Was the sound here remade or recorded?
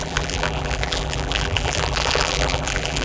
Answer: remade